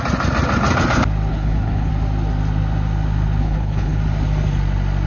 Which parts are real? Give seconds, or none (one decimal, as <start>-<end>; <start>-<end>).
0.0-1.3; 1.9-3.4; 4.0-5.1